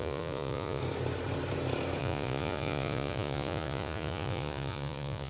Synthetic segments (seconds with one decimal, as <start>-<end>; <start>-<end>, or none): 0.0-0.8; 2.0-5.3